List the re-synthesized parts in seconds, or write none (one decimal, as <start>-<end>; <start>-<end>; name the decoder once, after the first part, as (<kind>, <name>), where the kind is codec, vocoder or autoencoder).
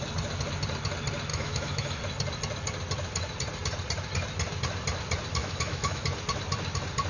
1.3-2.0 (autoencoder, DAC-VAE); 5.4-6.0